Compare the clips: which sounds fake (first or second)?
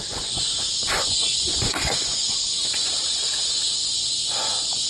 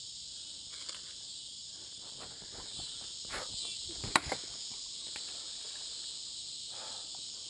first